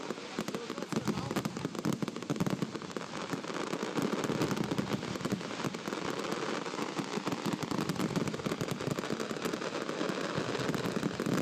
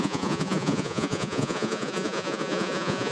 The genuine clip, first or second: first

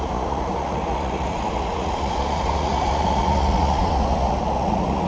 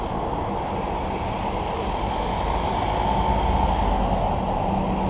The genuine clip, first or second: second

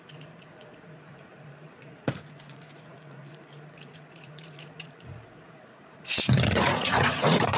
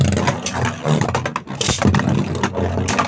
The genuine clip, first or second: second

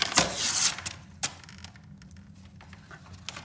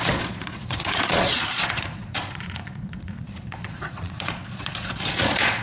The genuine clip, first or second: first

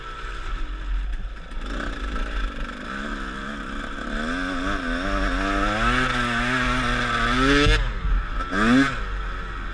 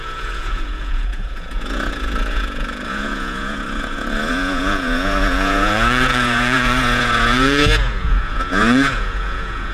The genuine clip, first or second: first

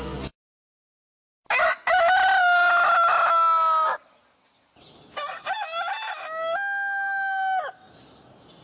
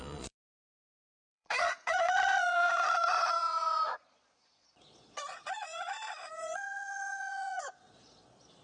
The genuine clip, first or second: first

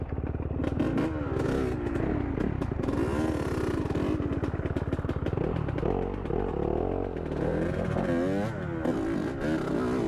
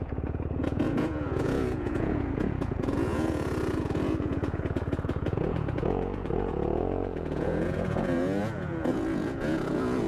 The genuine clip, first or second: first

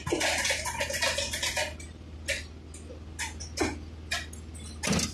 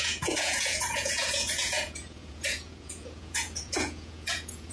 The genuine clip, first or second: first